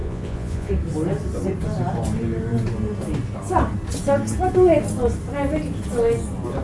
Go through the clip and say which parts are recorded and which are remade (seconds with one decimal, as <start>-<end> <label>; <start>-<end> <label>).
0.0-0.7 remade; 0.7-6.6 recorded